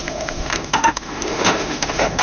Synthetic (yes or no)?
yes